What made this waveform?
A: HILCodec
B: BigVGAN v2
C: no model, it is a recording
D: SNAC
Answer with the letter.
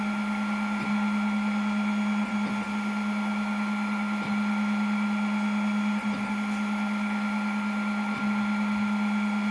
C